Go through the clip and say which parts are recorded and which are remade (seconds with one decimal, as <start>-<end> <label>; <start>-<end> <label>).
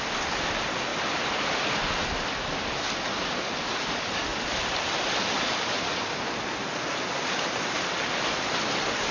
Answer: 0.0-0.9 recorded; 0.9-2.3 remade; 2.3-4.3 recorded; 4.3-5.0 remade; 5.0-9.1 recorded